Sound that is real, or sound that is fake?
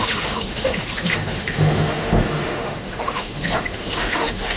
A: fake